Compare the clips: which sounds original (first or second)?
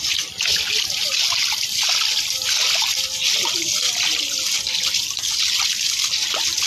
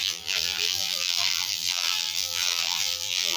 first